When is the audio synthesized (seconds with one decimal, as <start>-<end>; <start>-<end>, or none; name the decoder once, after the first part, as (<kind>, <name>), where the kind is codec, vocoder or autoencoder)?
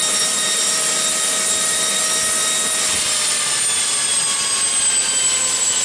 0.0-0.8 (vocoder, BigVGAN v2)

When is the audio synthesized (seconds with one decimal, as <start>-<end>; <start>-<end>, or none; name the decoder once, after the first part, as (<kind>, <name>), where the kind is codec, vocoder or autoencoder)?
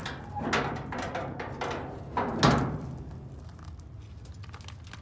none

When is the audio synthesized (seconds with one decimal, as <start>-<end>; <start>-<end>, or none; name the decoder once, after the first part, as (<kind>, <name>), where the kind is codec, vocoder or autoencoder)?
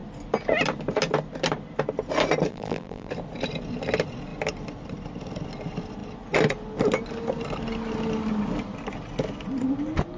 2.5-3.1 (vocoder, BigVGAN v2)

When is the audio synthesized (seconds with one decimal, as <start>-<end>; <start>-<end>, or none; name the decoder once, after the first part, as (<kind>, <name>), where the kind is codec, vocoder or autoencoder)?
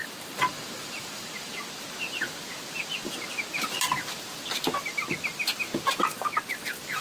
0.0-1.6 (vocoder, BigVGAN v2); 5.1-5.7; 6.5-7.0